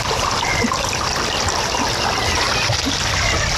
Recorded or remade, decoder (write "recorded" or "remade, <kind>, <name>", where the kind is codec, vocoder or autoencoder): recorded